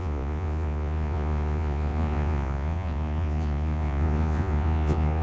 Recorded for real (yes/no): no